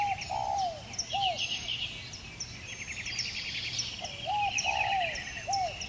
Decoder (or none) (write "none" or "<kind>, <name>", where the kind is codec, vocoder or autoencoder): none